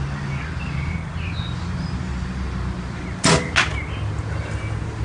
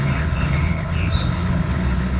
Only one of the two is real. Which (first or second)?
first